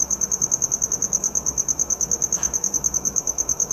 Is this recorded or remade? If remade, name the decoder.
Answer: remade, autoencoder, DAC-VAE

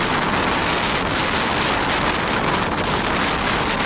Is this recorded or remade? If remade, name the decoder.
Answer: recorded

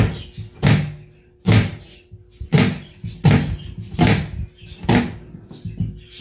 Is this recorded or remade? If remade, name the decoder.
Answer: recorded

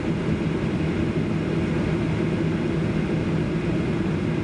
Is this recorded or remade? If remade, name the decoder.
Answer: recorded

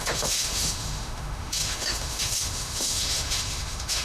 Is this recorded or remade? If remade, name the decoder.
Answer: remade, autoencoder, DAC-VAE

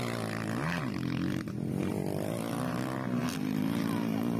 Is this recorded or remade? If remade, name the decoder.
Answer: recorded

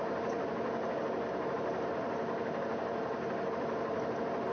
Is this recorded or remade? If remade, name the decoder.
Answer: recorded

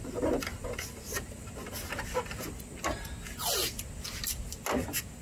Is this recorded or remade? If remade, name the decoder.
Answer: recorded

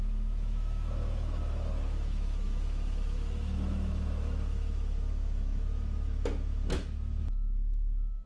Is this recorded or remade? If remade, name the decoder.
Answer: remade, autoencoder, DAC-VAE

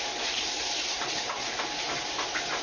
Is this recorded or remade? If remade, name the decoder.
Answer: recorded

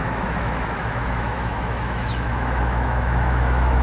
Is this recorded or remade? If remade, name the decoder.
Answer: remade, autoencoder, DAC-VAE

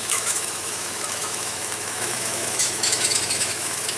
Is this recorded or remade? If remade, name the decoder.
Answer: remade, autoencoder, DAC-VAE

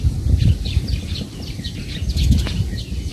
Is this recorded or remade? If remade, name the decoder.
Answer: recorded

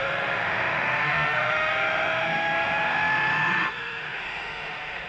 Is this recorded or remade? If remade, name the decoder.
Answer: remade, autoencoder, DAC-VAE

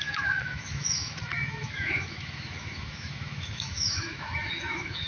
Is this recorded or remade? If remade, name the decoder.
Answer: remade, autoencoder, DAC-VAE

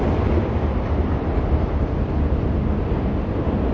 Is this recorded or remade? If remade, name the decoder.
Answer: recorded